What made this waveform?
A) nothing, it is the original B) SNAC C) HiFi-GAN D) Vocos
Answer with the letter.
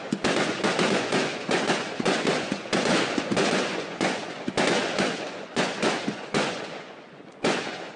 D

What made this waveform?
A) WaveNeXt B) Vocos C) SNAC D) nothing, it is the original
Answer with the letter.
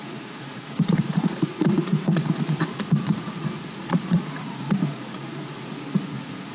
B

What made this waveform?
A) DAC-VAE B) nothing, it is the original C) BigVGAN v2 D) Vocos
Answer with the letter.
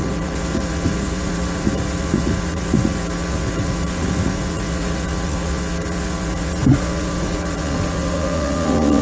D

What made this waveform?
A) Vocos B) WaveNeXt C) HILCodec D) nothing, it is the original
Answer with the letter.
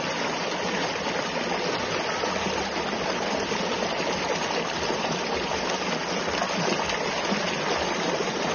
D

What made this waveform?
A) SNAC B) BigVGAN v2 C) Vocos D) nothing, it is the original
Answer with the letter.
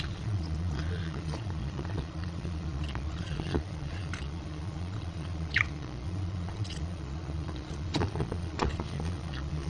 C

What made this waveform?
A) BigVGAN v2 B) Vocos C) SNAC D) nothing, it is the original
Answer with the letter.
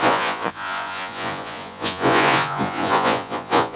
B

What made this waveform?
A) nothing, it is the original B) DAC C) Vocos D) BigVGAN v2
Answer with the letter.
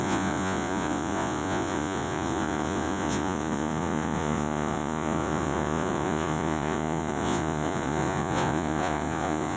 C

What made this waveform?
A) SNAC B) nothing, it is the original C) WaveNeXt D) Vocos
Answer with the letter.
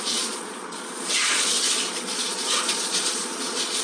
D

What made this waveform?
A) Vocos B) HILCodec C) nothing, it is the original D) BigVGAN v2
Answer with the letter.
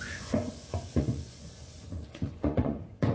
A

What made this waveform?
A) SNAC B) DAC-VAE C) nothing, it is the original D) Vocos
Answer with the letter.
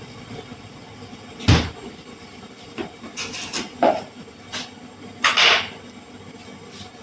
C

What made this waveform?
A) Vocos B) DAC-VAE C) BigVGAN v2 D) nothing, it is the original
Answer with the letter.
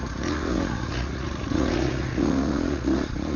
A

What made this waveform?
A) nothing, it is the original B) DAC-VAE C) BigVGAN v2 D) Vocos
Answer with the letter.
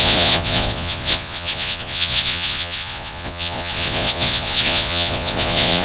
D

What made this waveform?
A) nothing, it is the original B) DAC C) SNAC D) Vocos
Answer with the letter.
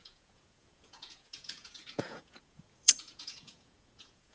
D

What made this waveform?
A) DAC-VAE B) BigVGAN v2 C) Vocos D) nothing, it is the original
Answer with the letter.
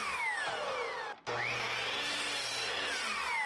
D